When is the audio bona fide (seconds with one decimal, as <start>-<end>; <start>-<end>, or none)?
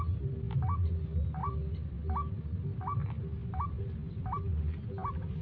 0.0-5.4